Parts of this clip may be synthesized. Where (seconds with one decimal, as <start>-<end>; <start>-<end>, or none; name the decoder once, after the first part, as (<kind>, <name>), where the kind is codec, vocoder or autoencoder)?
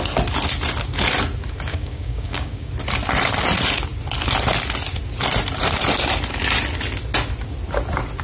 1.7-2.7 (codec, DAC)